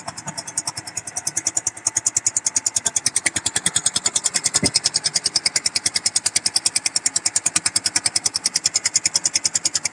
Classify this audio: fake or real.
real